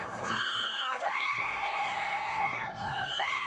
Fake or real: fake